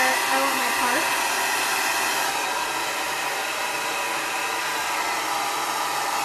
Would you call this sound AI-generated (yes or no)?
no